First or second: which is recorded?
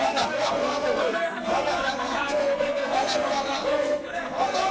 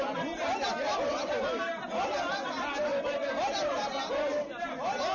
second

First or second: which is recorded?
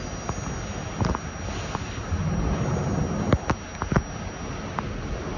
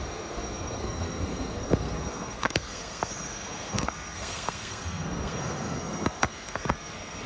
first